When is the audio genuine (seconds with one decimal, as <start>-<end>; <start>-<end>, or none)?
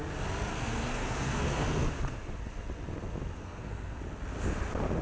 0.0-0.5; 1.9-3.4; 4.0-5.0